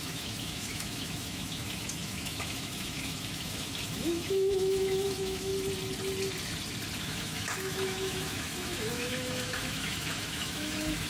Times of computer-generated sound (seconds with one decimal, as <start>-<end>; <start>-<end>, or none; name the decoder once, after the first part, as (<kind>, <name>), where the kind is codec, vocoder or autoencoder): 0.0-5.5 (autoencoder, DAC-VAE); 7.0-11.1